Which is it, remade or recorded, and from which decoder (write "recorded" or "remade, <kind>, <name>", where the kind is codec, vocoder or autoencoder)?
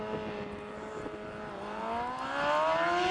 recorded